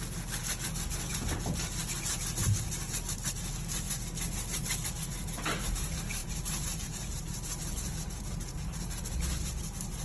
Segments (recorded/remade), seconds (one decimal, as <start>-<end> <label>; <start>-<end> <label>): 0.0-6.2 recorded; 6.2-9.0 remade; 9.0-10.0 recorded